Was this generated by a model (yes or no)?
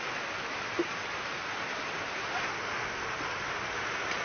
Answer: no